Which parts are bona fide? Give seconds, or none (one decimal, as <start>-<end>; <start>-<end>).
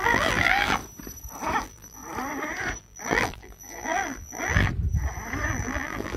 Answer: 0.8-1.6; 2.0-2.8; 4.7-5.5